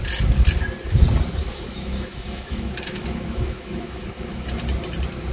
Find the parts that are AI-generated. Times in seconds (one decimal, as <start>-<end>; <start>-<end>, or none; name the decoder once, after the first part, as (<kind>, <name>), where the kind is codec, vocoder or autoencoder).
1.4-4.6 (autoencoder, DAC-VAE)